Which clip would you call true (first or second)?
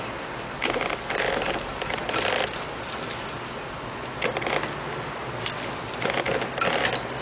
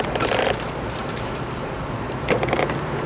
first